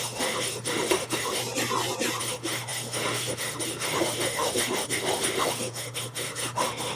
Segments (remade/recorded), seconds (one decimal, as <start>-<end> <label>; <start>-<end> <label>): 0.0-1.4 remade; 1.4-2.2 recorded; 2.2-7.0 remade